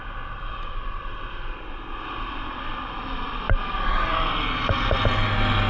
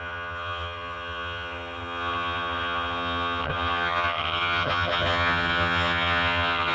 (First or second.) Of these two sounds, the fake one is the second